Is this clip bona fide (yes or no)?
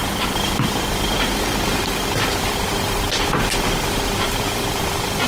no